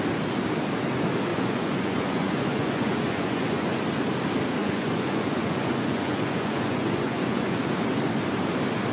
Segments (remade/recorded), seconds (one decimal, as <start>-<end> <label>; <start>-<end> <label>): 0.0-1.3 recorded; 1.3-3.8 remade; 3.8-4.6 recorded; 4.6-7.6 remade; 7.6-8.9 recorded